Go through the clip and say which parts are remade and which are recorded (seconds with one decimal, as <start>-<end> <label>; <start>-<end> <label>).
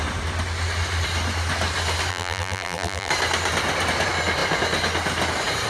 0.0-2.1 recorded; 2.1-3.1 remade; 3.1-5.7 recorded